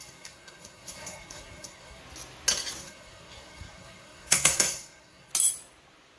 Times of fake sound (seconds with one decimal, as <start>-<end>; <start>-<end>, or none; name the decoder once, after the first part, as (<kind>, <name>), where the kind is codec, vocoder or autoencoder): 0.0-2.0 (codec, SNAC); 2.8-5.3